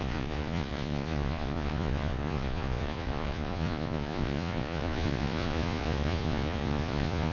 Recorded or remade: remade